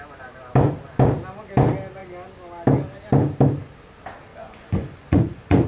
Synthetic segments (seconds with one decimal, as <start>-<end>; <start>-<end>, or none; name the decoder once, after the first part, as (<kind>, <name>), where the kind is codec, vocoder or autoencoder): 4.3-5.7 (vocoder, Vocos)